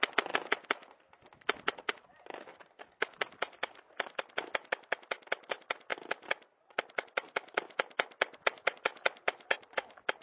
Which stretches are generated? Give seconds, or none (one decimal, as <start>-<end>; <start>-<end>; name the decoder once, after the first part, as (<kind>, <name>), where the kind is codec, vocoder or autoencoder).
none